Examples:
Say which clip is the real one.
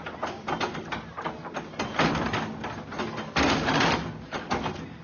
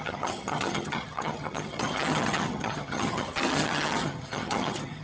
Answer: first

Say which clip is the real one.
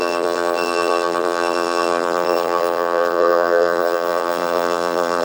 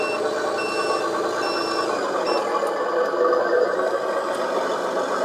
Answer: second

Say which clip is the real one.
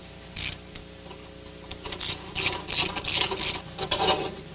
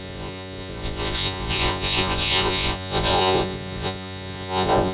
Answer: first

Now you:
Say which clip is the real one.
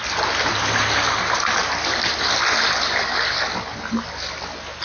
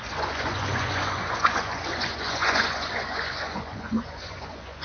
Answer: first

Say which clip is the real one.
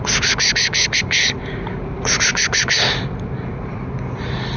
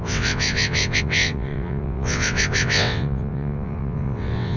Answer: first